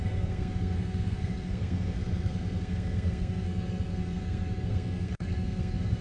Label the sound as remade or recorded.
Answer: remade